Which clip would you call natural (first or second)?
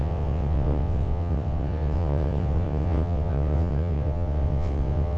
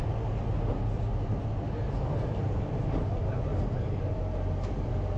second